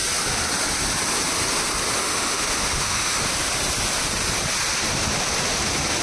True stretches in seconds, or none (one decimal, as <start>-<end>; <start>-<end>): 0.0-2.0; 3.2-6.0